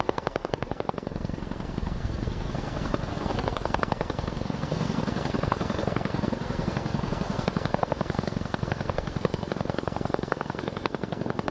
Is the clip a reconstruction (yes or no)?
yes